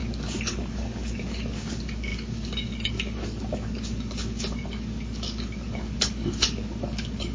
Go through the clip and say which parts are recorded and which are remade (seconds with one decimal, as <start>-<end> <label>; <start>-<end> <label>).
0.0-7.3 remade